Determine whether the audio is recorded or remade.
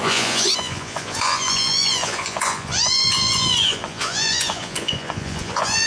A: remade